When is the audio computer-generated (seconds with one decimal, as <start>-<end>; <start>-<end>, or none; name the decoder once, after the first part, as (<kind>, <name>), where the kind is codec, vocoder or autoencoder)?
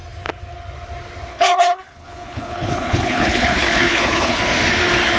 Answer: 1.3-4.4 (codec, HILCodec)